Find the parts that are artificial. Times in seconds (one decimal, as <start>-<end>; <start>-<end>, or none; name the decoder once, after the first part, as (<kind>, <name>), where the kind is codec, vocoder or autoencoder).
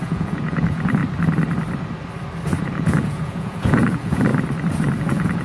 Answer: 0.0-1.0 (vocoder, Vocos); 2.6-4.3; 5.0-5.4